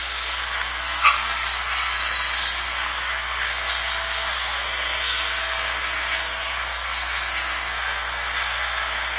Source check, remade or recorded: remade